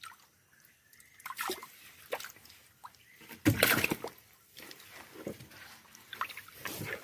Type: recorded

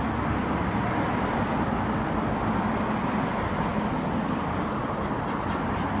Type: recorded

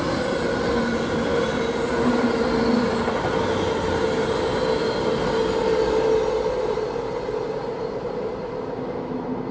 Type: recorded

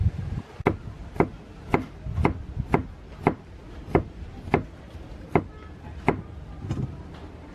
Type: recorded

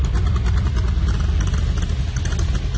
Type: recorded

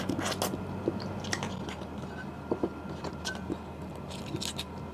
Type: recorded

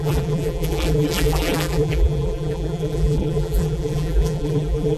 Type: remade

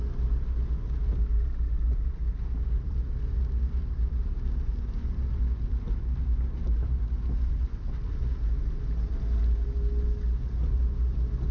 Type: recorded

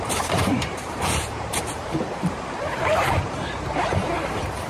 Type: remade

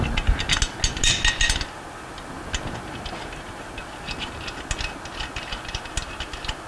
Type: recorded